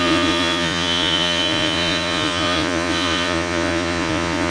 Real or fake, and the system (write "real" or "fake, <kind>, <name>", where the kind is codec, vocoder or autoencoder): fake, vocoder, Vocos